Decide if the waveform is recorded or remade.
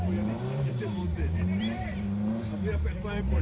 remade